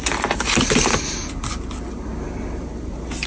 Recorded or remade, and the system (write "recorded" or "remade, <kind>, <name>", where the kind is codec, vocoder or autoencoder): recorded